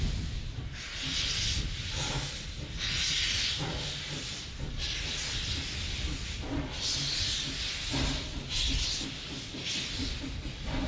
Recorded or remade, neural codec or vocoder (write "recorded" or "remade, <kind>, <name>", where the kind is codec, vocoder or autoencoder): recorded